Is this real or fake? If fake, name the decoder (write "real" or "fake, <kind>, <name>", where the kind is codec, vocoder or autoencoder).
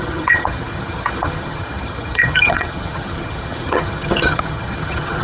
fake, vocoder, HiFi-GAN